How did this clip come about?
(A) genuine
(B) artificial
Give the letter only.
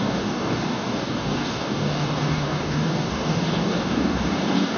B